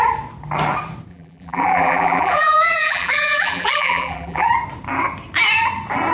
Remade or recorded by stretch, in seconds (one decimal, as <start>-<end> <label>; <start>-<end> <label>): 0.0-1.1 recorded; 1.1-4.5 remade; 4.5-6.1 recorded